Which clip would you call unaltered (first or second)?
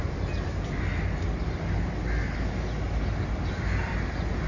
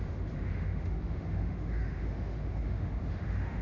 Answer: first